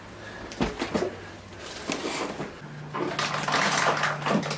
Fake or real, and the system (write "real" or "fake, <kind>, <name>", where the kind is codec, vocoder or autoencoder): real